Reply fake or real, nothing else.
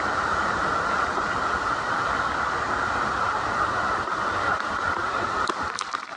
fake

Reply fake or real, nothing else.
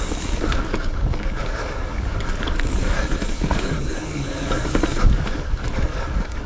fake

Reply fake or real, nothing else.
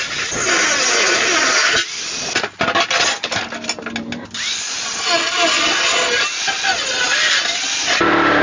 real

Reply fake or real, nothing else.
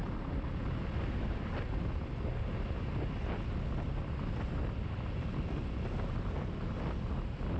real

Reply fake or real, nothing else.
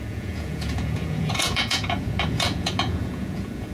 fake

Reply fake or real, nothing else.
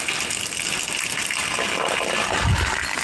real